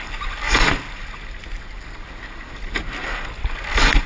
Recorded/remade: recorded